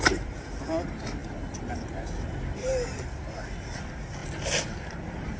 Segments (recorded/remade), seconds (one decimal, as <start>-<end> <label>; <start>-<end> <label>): 0.0-1.2 remade; 1.2-3.8 recorded; 3.8-5.4 remade